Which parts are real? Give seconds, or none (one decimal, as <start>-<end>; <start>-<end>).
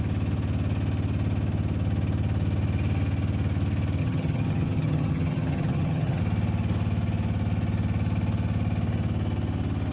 0.0-4.0; 6.2-9.9